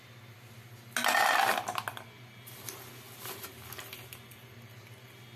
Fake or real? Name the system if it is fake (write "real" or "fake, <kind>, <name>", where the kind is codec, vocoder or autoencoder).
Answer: real